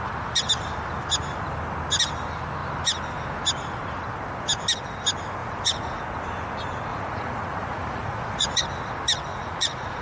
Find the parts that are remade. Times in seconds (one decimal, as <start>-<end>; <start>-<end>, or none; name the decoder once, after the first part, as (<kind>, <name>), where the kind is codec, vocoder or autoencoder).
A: 5.4-6.0 (vocoder, Vocos); 6.9-8.6; 9.3-10.0